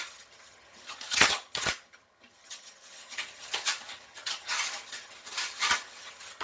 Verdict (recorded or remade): remade